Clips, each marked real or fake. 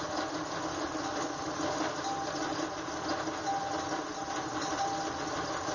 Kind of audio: real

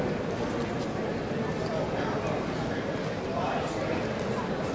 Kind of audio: real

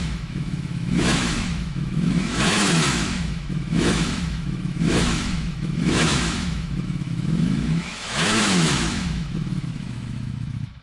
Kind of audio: fake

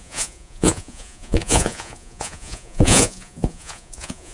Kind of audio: fake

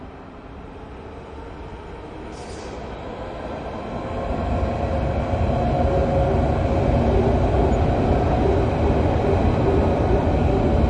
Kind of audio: real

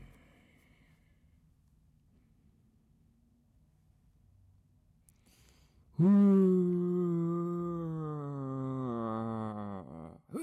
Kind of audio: real